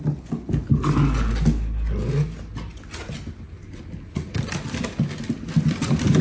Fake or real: real